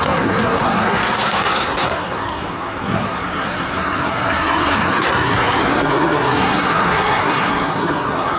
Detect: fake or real fake